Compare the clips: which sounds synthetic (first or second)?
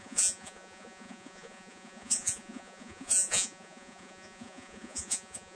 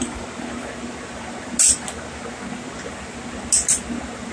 first